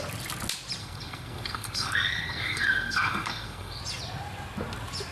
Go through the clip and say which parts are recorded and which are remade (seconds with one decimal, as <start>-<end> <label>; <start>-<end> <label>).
0.0-0.8 recorded; 0.8-3.8 remade; 3.8-5.1 recorded